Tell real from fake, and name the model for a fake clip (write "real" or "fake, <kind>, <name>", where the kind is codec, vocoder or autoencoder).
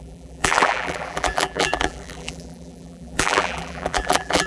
fake, vocoder, BigVGAN v2